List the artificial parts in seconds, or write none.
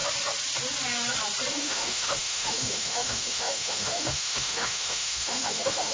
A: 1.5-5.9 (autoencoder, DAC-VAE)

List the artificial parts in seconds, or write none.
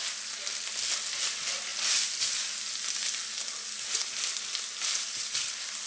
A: none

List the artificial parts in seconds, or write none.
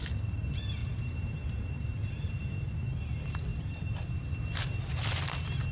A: 0.8-2.7 (vocoder, BigVGAN v2)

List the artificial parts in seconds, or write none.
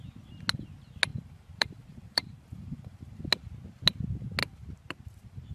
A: 1.1-3.2 (vocoder, BigVGAN v2)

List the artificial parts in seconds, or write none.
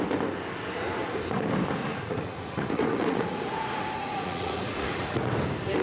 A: 1.8-5.3 (vocoder, Vocos)